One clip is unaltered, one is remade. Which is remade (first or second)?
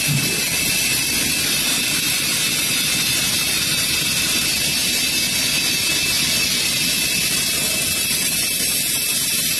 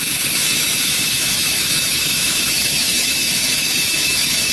second